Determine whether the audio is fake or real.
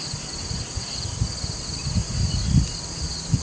real